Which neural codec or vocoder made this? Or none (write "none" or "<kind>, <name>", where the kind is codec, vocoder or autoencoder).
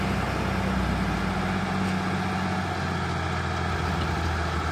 none